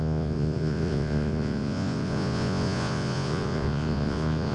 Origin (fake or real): fake